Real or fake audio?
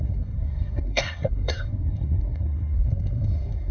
fake